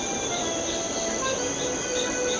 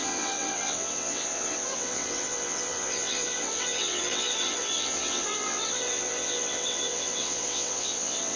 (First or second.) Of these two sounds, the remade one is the second